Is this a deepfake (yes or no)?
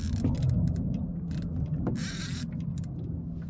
no